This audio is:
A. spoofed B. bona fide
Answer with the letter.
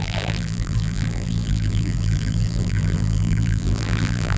A